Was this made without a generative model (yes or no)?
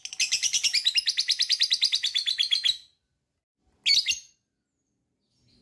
yes